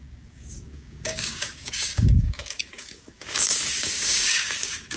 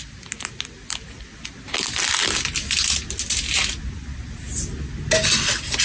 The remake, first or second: first